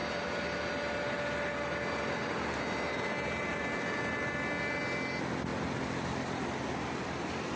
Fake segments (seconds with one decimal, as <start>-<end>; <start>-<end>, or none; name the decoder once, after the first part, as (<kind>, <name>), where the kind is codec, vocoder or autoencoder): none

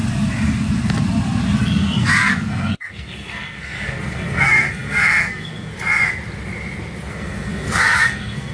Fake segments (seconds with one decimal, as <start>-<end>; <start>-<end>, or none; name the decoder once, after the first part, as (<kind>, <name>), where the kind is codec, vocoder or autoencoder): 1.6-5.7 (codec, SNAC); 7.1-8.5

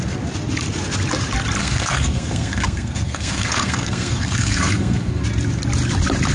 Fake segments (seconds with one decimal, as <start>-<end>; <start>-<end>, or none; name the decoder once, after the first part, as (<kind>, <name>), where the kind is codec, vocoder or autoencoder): 1.6-5.2 (codec, SNAC)

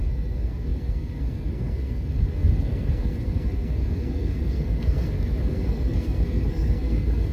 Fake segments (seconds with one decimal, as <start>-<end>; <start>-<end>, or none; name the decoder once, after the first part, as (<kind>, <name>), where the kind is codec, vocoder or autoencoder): 0.0-7.3 (codec, SNAC)